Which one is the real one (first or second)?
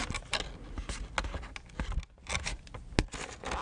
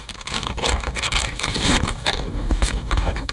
first